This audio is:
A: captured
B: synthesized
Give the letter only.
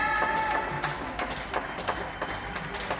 A